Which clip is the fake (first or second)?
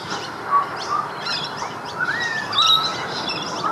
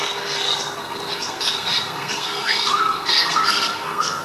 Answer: second